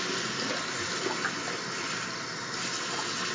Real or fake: real